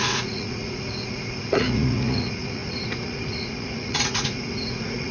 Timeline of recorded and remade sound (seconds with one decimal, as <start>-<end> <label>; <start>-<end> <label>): 0.0-5.1 remade